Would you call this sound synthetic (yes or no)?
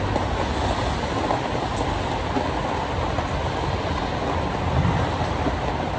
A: no